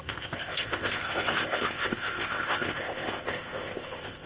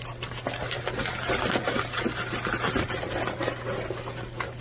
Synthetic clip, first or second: first